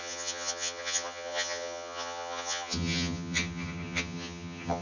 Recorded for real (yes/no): no